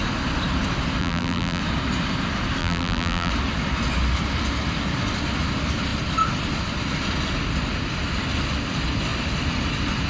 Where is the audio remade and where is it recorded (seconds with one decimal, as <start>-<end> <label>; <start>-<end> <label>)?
0.0-1.0 recorded; 1.0-1.6 remade; 1.6-2.6 recorded; 2.6-3.3 remade; 3.3-10.1 recorded